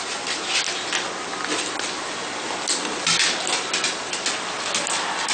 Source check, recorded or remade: recorded